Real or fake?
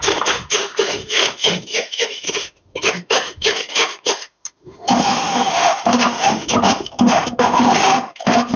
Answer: fake